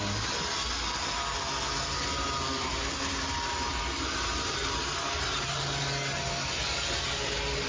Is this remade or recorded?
recorded